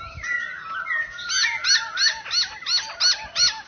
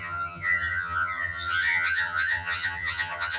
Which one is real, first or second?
first